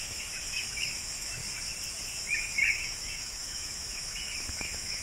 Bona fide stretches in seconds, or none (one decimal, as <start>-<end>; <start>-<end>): 1.4-2.7